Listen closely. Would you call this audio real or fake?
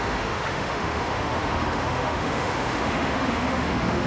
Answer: fake